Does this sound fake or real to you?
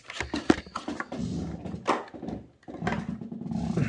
real